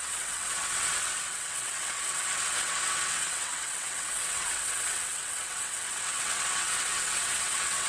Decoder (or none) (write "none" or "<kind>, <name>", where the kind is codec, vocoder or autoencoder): vocoder, WaveNeXt